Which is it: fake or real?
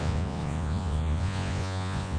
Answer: fake